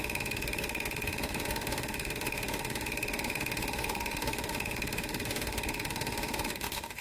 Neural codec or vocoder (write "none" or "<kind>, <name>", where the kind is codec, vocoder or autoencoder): autoencoder, DAC-VAE